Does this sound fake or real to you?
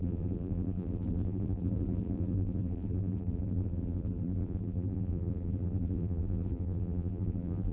fake